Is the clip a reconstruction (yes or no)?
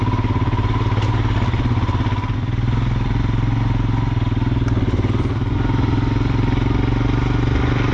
no